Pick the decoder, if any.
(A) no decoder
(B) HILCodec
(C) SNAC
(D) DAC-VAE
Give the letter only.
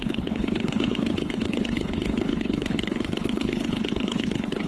B